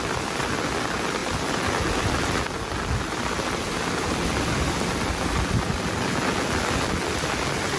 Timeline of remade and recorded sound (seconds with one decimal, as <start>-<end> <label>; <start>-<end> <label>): 0.0-7.8 recorded